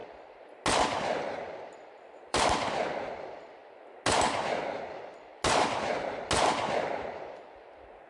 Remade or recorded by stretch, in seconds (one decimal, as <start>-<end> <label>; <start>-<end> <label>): 0.0-0.8 recorded; 0.8-3.6 remade; 3.6-4.8 recorded; 4.8-5.3 remade; 5.3-8.1 recorded